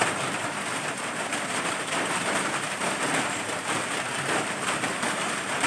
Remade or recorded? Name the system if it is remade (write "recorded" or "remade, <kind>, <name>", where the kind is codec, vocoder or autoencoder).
remade, vocoder, BigVGAN v2